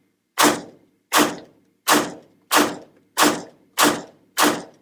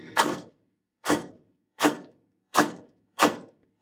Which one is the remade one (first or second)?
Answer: second